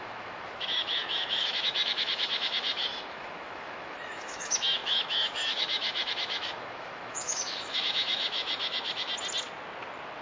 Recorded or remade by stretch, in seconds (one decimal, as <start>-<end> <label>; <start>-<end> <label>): 0.0-9.1 remade; 9.1-10.2 recorded